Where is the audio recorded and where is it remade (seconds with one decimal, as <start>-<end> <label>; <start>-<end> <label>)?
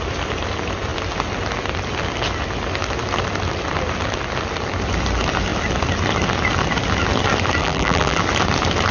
0.0-7.6 recorded; 7.6-8.2 remade; 8.2-8.9 recorded